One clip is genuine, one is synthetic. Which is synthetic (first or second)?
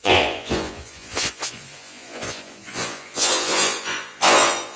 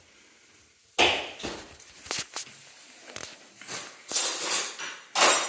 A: first